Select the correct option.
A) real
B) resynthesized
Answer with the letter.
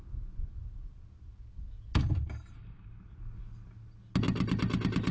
A